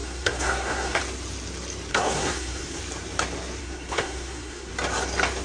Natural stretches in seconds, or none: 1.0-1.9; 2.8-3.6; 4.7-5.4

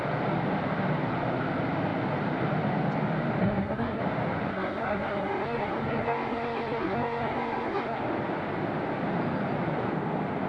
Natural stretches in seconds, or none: 0.0-3.4; 4.0-4.5; 8.0-10.5

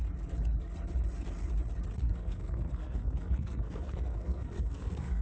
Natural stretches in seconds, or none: 0.0-2.0

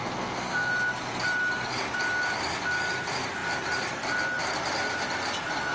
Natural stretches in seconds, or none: 0.7-5.7